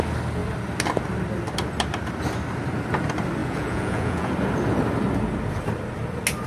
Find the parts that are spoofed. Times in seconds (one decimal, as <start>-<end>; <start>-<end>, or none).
3.4-4.3